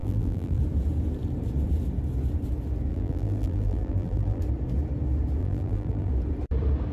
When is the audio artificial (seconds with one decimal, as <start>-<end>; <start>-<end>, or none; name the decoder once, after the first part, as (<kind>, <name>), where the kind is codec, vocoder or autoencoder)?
0.0-0.6 (vocoder, BigVGAN v2); 2.9-4.4; 5.4-6.1